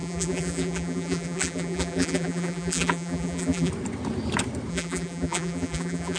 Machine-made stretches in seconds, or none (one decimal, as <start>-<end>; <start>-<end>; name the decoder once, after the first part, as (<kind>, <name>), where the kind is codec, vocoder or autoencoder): 0.0-3.7 (vocoder, BigVGAN v2); 4.7-6.2